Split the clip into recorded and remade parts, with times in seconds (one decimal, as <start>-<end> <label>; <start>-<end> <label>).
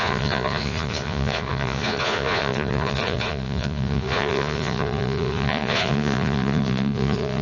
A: 0.0-7.4 remade